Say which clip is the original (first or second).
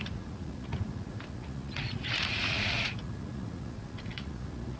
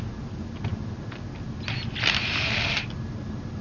second